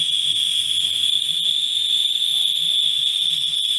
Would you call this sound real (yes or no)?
yes